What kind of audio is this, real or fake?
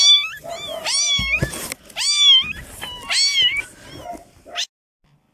real